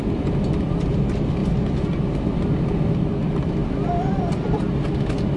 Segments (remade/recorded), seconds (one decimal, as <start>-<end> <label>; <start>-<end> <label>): 0.0-3.2 recorded; 3.2-4.6 remade; 4.6-5.4 recorded